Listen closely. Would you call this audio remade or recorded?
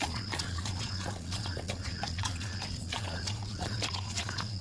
remade